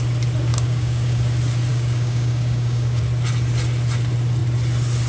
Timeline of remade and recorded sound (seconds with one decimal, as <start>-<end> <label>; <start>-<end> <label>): 0.0-0.5 recorded; 0.5-1.2 remade; 1.2-1.7 recorded; 1.7-3.0 remade; 3.0-5.1 recorded